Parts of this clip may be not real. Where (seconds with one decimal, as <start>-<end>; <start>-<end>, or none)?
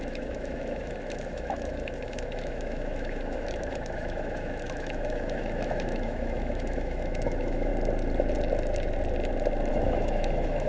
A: 0.0-7.7; 9.7-10.7